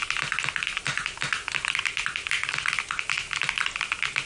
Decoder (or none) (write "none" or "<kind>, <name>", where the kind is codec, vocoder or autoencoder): none